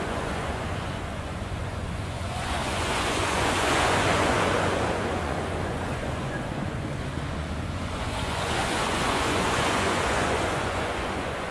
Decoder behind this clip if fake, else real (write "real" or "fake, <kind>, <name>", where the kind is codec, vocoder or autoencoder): fake, vocoder, Vocos